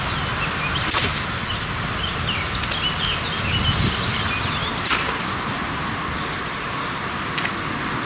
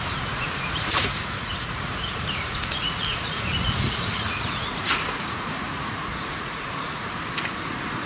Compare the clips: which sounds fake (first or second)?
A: second